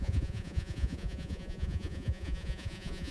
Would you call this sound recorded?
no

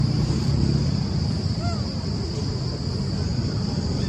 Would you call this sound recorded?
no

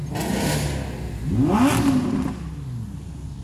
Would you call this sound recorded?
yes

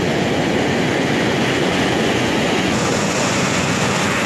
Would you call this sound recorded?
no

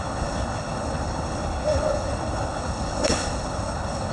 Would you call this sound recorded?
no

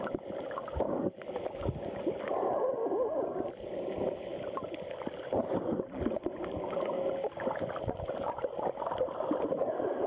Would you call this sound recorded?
yes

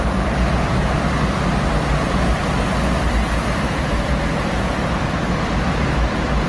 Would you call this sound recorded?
no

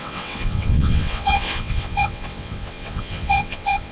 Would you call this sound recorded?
no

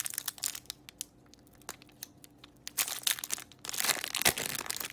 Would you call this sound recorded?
yes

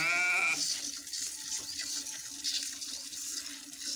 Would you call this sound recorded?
yes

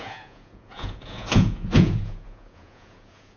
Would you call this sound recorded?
no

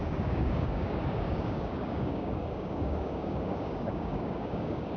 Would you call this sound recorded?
no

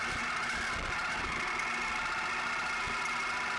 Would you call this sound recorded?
yes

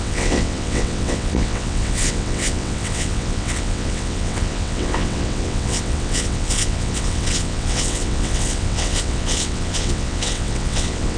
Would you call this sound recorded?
no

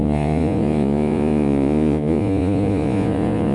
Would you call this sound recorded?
no